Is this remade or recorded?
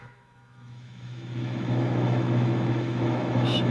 remade